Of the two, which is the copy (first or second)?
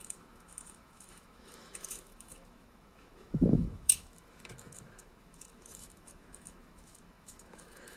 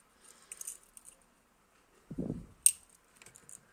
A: first